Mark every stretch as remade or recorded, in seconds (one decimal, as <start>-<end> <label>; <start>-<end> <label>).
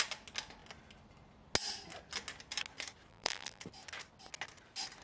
0.0-3.1 recorded; 3.1-3.6 remade; 3.6-5.0 recorded